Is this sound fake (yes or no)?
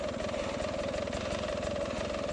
no